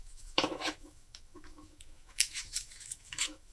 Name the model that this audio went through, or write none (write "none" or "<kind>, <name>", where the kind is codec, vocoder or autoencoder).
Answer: autoencoder, DAC-VAE